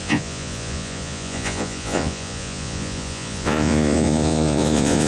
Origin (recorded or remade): remade